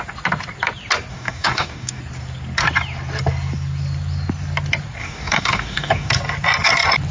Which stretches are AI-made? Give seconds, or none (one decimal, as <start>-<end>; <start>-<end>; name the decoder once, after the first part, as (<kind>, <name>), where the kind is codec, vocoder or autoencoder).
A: 1.1-2.0 (codec, DAC); 5.0-6.1